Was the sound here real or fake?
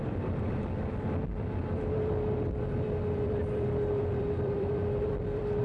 fake